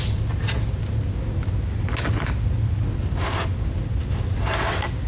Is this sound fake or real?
real